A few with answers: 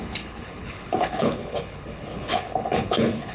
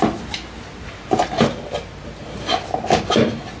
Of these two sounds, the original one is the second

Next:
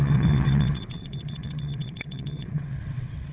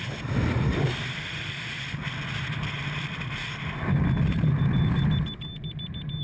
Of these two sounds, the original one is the second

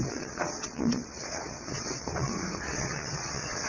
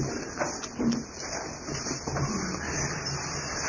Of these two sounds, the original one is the second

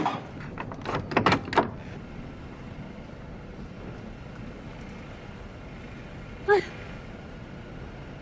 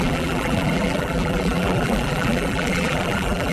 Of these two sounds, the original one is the first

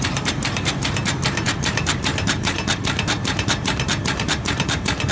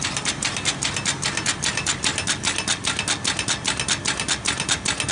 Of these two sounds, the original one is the second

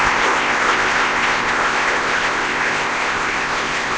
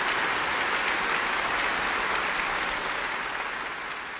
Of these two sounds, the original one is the second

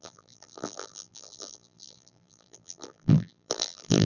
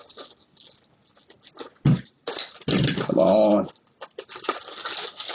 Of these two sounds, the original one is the second